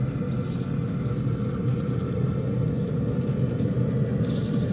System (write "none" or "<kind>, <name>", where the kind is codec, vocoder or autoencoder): none